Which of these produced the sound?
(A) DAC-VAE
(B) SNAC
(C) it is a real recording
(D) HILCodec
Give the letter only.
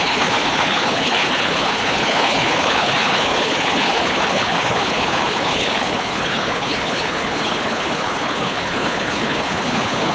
D